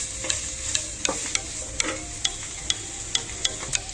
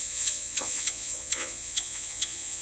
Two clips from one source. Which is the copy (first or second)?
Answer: second